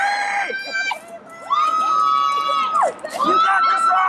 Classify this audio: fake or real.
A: real